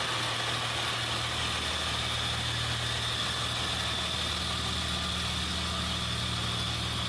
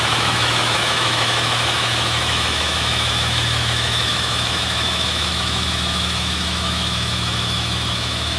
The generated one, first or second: second